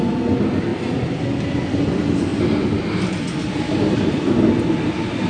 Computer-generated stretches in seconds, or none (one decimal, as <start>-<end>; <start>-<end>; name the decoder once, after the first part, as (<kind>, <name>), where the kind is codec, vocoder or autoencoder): none